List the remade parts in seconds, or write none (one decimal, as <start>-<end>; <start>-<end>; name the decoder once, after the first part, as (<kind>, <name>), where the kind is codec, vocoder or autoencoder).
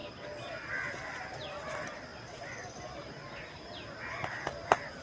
none